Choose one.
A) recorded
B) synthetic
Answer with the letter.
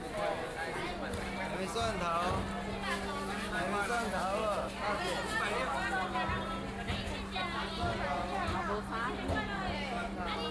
A